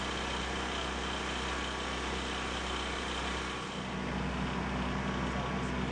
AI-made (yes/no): no